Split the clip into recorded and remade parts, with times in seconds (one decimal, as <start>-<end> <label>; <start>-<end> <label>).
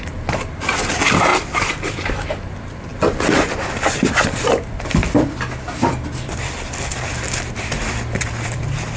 0.0-1.3 remade; 1.3-1.9 recorded; 1.9-2.9 remade; 2.9-3.5 recorded; 3.5-5.0 remade; 5.0-5.6 recorded; 5.6-9.0 remade